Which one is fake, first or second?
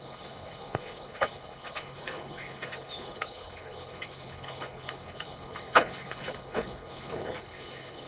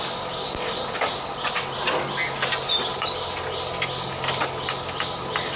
first